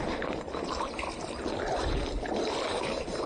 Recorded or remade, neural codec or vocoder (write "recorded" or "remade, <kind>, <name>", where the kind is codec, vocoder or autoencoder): recorded